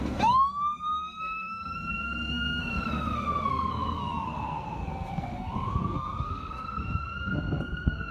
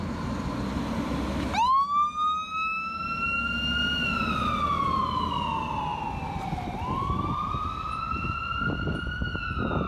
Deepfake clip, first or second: first